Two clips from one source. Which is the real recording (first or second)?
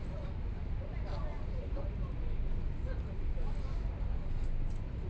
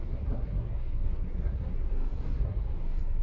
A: first